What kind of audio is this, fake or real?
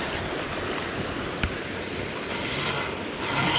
real